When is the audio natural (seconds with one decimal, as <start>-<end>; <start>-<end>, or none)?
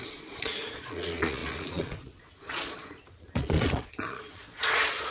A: none